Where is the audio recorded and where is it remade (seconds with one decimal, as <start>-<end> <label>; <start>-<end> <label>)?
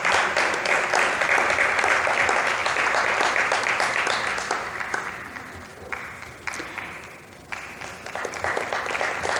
0.0-2.6 recorded; 2.6-3.8 remade; 3.8-9.4 recorded